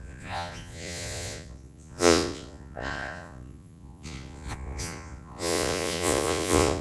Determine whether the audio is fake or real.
fake